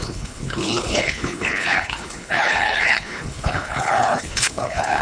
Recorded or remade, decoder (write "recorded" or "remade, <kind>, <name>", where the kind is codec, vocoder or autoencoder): remade, codec, HILCodec